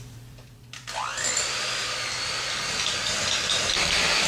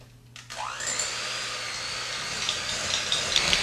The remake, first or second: first